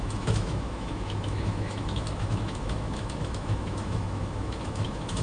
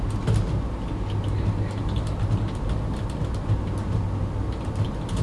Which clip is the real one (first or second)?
second